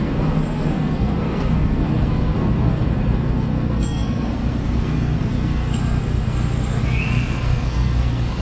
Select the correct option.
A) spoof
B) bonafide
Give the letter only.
A